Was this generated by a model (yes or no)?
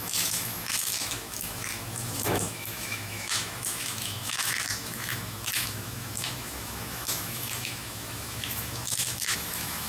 yes